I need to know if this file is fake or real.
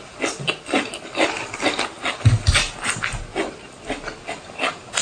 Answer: real